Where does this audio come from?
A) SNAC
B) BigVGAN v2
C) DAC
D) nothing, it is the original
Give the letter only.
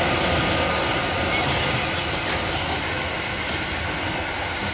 D